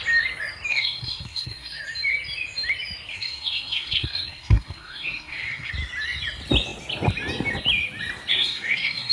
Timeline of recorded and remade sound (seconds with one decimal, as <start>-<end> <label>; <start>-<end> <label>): 0.0-0.7 recorded; 0.7-1.8 remade; 1.8-3.1 recorded; 3.1-5.7 remade; 5.7-8.3 recorded; 8.3-9.1 remade

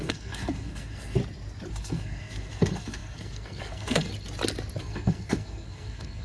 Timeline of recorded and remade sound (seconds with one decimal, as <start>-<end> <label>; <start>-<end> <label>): 0.0-1.2 remade; 1.2-1.7 recorded; 1.7-4.1 remade; 4.1-4.8 recorded; 4.8-6.2 remade

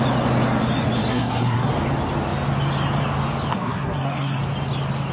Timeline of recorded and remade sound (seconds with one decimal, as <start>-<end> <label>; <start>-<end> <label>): 0.0-1.1 recorded; 1.1-1.7 remade; 1.7-3.5 recorded; 3.5-4.4 remade; 4.4-5.1 recorded

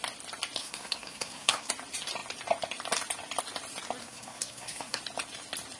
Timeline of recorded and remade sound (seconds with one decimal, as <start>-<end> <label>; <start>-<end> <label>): 0.0-0.6 recorded; 0.6-1.7 remade; 1.7-4.0 recorded; 4.0-5.0 remade; 5.0-5.8 recorded